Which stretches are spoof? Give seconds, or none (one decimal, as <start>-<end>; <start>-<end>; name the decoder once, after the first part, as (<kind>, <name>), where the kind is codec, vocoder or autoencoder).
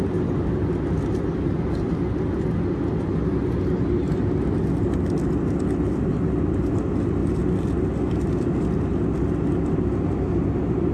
none